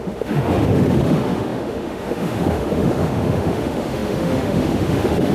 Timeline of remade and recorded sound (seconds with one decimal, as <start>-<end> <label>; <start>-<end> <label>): 0.0-5.3 remade